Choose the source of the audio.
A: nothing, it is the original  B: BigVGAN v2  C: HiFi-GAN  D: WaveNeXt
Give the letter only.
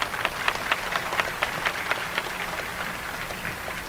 A